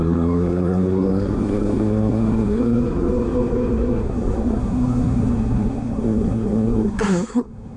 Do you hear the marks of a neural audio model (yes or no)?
yes